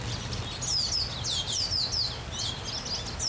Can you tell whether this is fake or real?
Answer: real